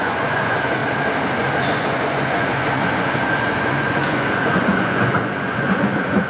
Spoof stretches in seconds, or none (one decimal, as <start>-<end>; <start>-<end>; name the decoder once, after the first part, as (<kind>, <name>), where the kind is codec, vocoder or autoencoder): 0.0-0.8 (vocoder, Vocos); 1.6-6.3